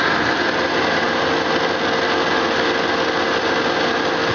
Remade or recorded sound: recorded